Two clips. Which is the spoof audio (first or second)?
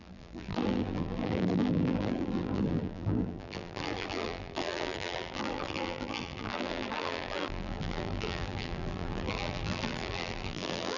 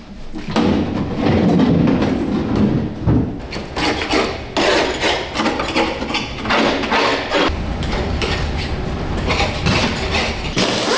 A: first